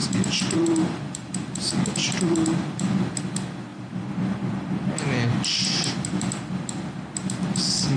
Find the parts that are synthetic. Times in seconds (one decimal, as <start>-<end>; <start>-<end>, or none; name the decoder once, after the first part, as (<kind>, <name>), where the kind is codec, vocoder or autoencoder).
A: 0.0-1.3 (vocoder, BigVGAN v2); 2.0-3.2; 3.7-6.5